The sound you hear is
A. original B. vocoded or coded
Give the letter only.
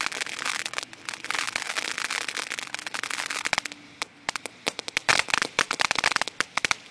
A